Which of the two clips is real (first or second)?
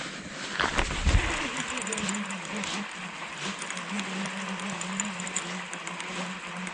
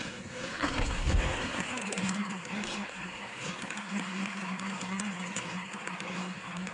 first